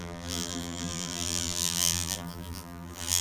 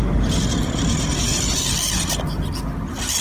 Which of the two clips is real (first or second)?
second